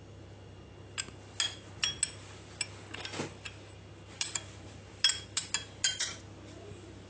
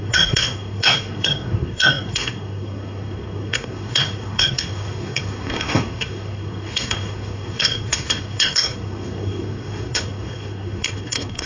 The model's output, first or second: second